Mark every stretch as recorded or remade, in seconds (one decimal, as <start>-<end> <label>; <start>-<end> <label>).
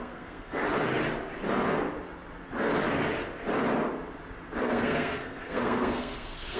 0.0-0.6 remade; 0.6-4.6 recorded; 4.6-6.6 remade